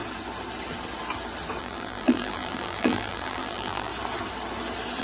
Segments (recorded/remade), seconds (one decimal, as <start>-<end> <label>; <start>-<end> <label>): 0.0-1.6 recorded; 1.6-3.9 remade; 3.9-5.0 recorded